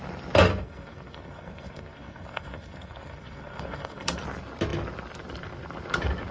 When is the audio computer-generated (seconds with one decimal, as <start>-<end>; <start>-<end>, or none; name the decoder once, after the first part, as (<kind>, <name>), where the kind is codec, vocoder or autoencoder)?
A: 0.5-4.2 (codec, SNAC)